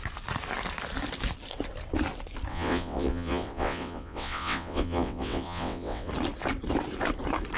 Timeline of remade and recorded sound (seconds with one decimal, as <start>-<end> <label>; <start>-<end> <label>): 0.0-2.5 recorded; 2.5-6.1 remade; 6.1-7.6 recorded